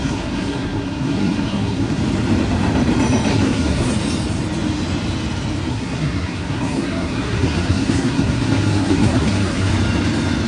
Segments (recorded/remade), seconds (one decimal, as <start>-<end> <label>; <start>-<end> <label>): 0.0-2.0 remade; 2.0-3.3 recorded; 3.3-3.9 remade; 3.9-5.7 recorded; 5.7-9.7 remade; 9.7-10.5 recorded